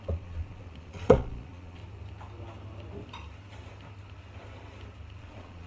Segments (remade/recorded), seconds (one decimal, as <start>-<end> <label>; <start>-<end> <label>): 0.0-1.8 remade; 1.8-5.2 recorded; 5.2-5.7 remade